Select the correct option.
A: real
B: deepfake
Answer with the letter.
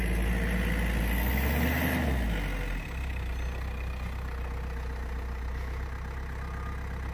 A